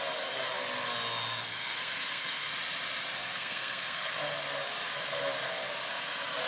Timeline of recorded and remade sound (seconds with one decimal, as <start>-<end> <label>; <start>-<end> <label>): 0.0-1.5 recorded; 1.5-2.5 remade; 2.5-3.2 recorded; 3.2-4.1 remade; 4.1-6.5 recorded